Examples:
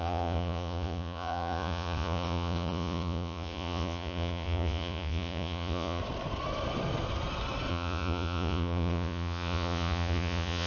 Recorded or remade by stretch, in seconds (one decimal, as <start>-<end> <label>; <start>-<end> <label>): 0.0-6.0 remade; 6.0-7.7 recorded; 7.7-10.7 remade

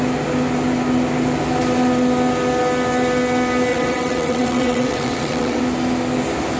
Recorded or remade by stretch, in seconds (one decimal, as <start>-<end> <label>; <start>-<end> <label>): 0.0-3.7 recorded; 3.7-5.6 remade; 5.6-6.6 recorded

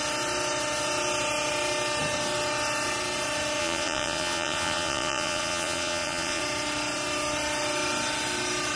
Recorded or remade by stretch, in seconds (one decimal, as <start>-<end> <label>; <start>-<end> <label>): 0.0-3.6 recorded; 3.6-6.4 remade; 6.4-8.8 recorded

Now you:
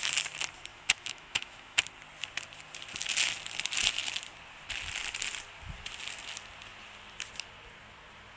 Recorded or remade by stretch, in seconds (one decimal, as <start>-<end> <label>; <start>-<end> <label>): 0.0-0.7 recorded; 0.7-1.8 remade; 1.8-8.4 recorded

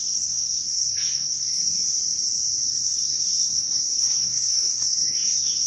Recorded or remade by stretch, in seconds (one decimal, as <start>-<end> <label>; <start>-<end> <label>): 0.0-1.6 remade; 1.6-2.7 recorded; 2.7-5.7 remade

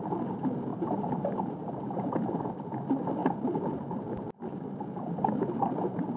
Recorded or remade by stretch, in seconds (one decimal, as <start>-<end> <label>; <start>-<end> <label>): 0.0-0.7 recorded; 0.7-2.3 remade; 2.3-6.2 recorded